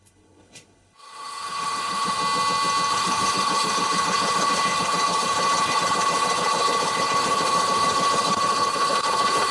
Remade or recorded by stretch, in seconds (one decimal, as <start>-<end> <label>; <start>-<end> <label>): 0.0-2.2 remade; 2.2-2.9 recorded; 2.9-9.5 remade